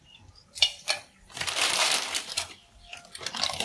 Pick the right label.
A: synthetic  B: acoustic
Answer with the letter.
A